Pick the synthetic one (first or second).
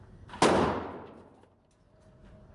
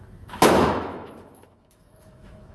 second